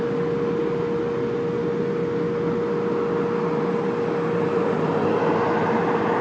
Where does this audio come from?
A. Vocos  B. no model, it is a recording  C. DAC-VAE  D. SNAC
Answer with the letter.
B